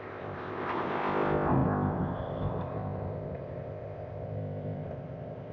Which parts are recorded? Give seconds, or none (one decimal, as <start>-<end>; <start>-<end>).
none